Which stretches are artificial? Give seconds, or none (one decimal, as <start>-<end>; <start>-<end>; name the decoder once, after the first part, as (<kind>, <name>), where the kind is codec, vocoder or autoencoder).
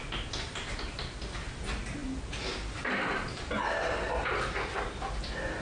none